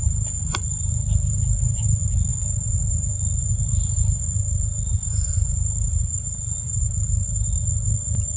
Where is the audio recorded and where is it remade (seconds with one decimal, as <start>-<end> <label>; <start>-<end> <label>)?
0.0-8.4 remade